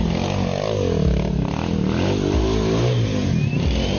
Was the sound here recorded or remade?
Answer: recorded